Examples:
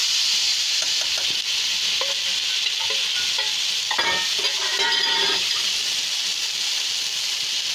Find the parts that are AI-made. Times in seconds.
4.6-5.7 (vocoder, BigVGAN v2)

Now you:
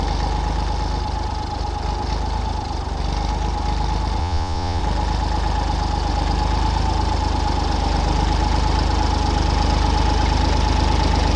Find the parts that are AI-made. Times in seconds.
4.2-4.8 (vocoder, Vocos)